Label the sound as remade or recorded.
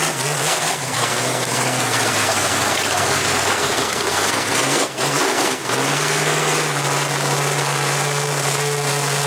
remade